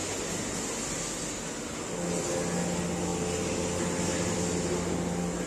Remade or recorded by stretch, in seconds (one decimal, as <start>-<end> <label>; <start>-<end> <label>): 0.0-5.5 recorded